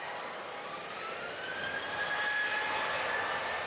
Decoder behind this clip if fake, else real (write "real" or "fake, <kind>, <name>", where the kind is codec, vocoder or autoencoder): real